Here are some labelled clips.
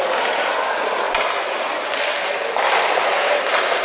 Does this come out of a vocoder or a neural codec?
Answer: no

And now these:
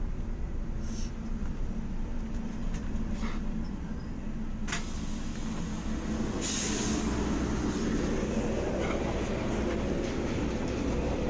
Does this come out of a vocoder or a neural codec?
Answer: no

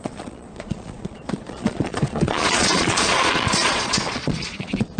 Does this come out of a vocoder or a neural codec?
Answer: yes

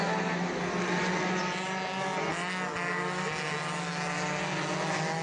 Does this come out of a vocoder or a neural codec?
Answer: no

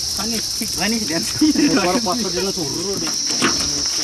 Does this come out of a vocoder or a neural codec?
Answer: no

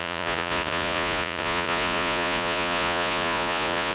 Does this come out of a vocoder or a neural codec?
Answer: yes